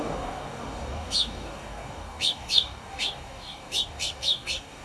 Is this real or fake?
fake